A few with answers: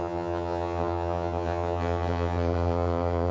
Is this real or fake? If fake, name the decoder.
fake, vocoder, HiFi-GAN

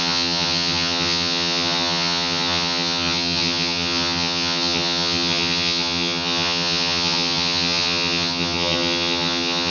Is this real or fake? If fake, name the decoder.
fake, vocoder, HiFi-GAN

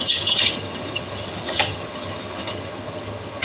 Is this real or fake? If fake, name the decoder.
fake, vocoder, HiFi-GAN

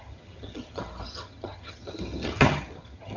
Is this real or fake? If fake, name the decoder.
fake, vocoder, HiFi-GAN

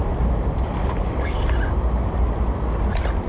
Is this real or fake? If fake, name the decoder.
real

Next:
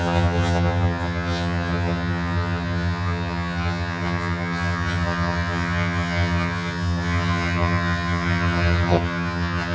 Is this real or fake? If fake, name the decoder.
fake, vocoder, HiFi-GAN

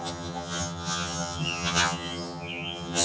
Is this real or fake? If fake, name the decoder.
fake, vocoder, HiFi-GAN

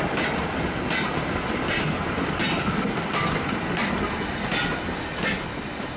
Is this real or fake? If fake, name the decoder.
real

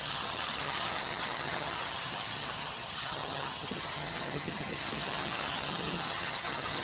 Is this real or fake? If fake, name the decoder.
fake, vocoder, HiFi-GAN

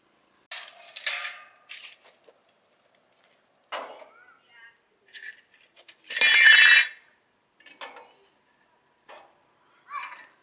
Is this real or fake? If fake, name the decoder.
real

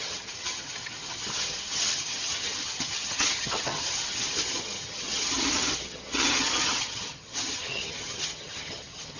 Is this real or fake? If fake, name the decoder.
fake, vocoder, HiFi-GAN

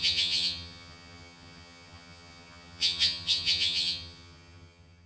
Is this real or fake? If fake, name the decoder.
fake, vocoder, HiFi-GAN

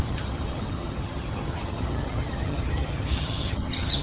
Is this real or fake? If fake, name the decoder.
fake, vocoder, HiFi-GAN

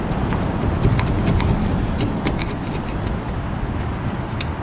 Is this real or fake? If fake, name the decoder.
real